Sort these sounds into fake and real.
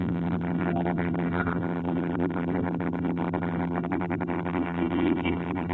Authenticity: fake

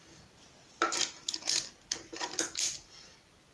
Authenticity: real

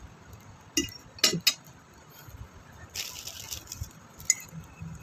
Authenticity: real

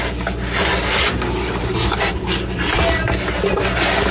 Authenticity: real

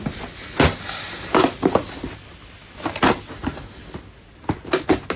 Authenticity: real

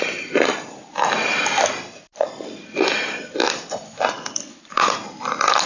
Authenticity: fake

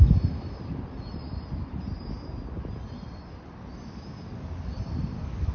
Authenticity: real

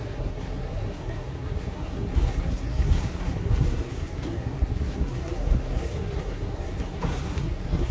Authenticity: fake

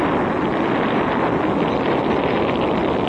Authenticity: real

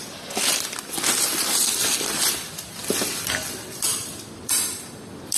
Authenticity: fake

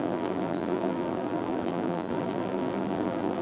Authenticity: fake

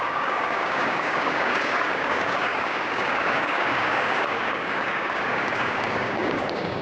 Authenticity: fake